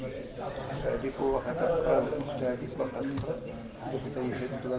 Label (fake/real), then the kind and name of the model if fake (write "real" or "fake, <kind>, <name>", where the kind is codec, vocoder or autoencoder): real